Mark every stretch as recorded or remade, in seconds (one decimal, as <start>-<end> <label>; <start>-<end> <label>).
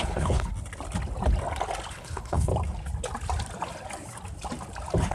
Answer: 0.0-0.5 remade; 0.5-1.9 recorded; 1.9-2.5 remade; 2.5-5.1 recorded